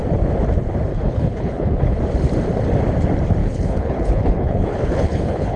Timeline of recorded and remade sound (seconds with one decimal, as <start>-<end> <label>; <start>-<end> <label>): 0.0-0.9 recorded; 0.9-2.0 remade; 2.0-3.4 recorded; 3.4-5.6 remade